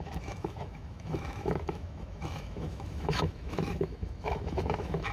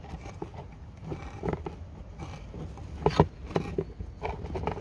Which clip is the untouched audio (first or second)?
second